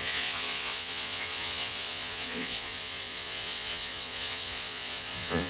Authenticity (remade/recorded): remade